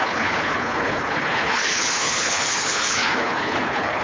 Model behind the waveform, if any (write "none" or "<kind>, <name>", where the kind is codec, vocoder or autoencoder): codec, HILCodec